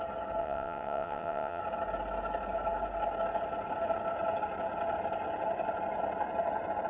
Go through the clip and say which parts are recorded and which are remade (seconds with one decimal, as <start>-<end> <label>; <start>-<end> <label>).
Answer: 0.0-0.4 recorded; 0.4-1.6 remade; 1.6-6.9 recorded